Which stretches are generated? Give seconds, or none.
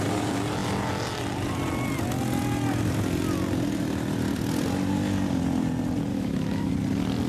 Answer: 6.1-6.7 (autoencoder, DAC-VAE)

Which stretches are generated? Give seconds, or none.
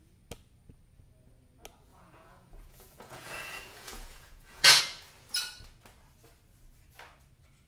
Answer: 1.9-4.8 (vocoder, Vocos)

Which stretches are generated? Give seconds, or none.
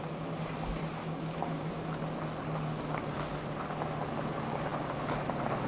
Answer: 1.0-1.7 (codec, DAC)